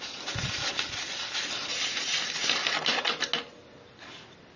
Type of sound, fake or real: real